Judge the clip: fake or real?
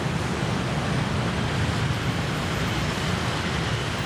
real